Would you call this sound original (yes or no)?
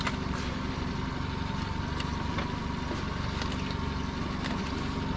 yes